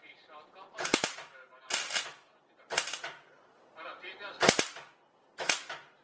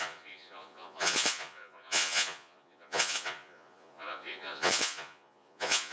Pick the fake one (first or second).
second